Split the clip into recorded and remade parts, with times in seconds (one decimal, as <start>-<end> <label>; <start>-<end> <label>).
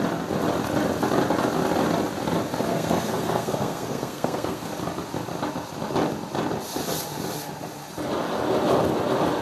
0.0-2.7 recorded; 2.7-4.7 remade; 4.7-9.4 recorded